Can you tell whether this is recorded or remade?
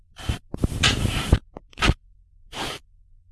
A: remade